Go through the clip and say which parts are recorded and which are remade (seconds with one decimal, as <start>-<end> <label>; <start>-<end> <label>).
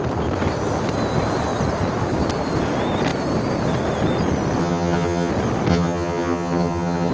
0.0-4.6 recorded; 4.6-5.3 remade; 5.3-5.7 recorded; 5.7-7.1 remade